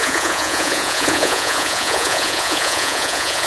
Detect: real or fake fake